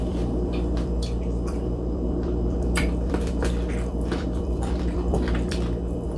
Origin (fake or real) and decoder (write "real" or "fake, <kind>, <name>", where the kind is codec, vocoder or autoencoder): fake, vocoder, BigVGAN v2